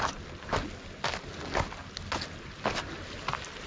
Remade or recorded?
recorded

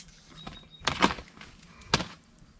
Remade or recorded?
recorded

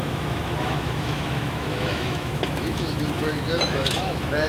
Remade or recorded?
remade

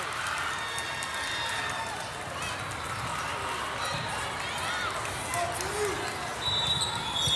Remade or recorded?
recorded